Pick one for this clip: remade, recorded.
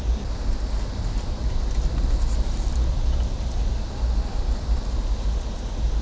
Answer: recorded